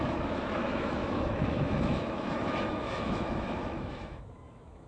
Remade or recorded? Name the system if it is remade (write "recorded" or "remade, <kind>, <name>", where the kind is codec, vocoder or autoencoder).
remade, autoencoder, DAC-VAE